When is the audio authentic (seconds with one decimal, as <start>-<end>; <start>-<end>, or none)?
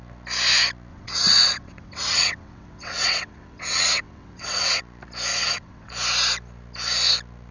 0.0-0.9; 4.8-5.3; 5.9-7.5